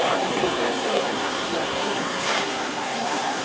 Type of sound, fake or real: fake